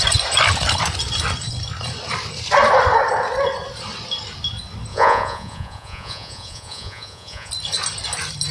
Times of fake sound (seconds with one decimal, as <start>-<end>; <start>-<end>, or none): 4.9-7.5